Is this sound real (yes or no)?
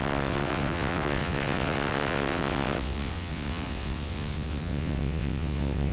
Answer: no